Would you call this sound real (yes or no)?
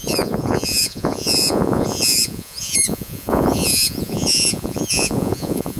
no